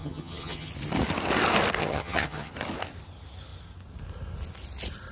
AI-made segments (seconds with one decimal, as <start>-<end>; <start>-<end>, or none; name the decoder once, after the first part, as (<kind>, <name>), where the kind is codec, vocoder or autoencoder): 0.0-0.7 (vocoder, HiFi-GAN); 1.8-2.5